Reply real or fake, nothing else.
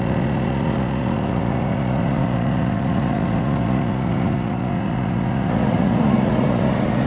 fake